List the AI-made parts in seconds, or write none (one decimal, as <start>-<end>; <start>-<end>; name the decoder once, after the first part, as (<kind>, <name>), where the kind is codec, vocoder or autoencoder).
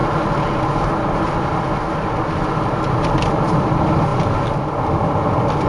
none